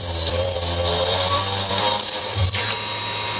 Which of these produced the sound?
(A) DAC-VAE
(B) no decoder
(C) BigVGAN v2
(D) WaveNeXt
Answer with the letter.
C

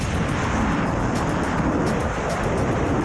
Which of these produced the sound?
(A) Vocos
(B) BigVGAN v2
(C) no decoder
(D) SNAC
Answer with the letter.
C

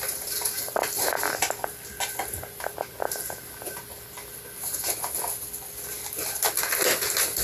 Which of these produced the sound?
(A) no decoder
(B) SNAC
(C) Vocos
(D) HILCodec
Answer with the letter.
A